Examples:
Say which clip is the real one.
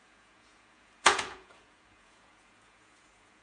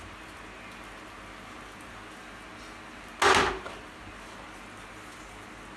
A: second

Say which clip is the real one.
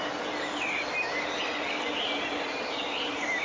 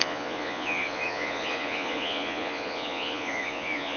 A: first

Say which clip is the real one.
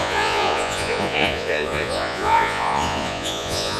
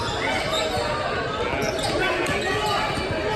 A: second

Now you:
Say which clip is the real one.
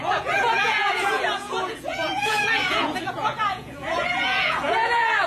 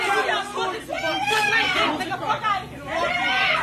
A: second